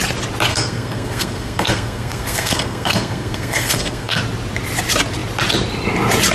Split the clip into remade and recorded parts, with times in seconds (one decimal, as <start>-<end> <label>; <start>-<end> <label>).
0.0-0.5 recorded; 0.5-4.2 remade; 4.2-6.3 recorded